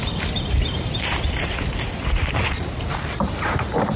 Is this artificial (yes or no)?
yes